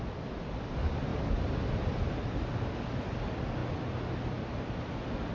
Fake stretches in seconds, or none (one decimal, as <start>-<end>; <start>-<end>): none